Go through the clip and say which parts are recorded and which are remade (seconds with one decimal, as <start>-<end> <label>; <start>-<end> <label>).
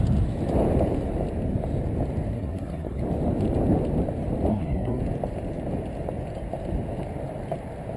0.0-2.3 recorded; 2.3-3.0 remade; 3.0-4.5 recorded; 4.5-5.0 remade; 5.0-8.0 recorded